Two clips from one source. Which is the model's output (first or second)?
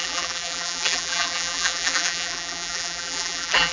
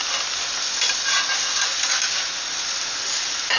first